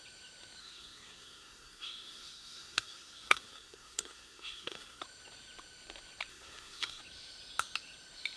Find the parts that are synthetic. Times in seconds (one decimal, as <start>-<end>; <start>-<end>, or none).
0.6-5.0; 6.3-7.0